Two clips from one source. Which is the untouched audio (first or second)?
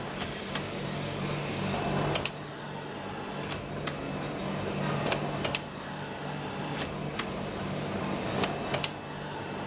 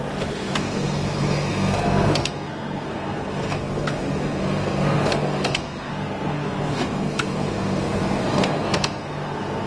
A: first